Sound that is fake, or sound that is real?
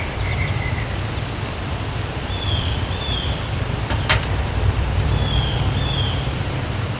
fake